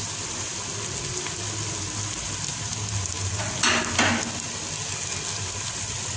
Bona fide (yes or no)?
yes